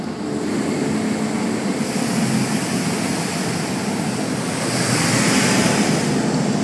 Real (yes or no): yes